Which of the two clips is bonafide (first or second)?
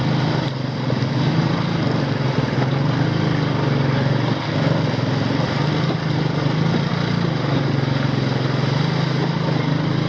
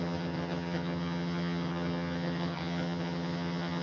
first